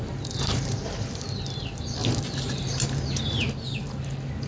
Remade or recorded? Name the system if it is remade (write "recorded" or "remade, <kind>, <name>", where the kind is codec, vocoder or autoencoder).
recorded